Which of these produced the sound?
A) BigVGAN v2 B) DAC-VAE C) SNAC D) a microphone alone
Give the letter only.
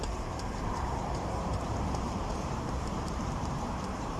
A